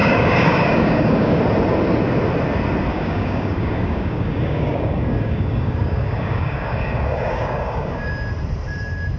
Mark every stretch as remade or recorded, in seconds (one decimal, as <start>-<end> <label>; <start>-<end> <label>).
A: 0.0-1.4 remade; 1.4-2.9 recorded; 2.9-8.1 remade; 8.1-9.2 recorded